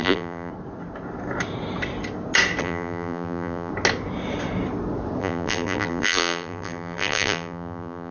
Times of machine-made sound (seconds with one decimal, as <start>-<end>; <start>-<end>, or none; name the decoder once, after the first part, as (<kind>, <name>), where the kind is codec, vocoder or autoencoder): 0.0-0.5 (vocoder, BigVGAN v2); 2.6-3.7; 5.2-8.1